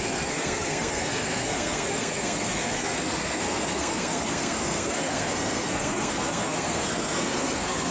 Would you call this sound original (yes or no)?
no